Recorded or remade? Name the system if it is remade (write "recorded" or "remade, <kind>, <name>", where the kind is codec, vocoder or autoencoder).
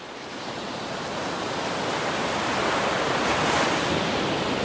recorded